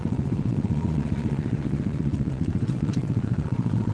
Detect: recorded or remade remade